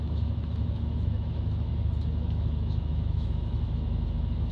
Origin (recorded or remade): remade